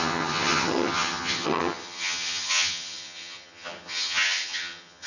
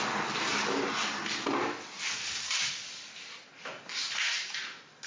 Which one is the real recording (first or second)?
second